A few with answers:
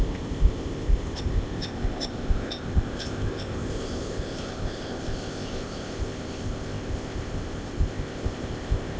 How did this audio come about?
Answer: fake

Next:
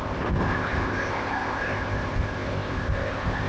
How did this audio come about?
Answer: fake